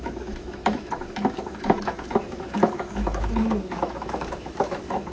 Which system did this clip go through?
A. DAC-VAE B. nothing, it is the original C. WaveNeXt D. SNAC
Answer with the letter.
A